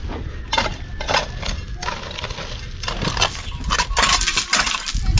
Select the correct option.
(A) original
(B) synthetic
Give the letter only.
A